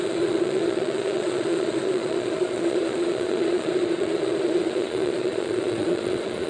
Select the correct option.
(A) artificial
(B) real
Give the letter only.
A